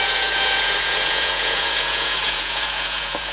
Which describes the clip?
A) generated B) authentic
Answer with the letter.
A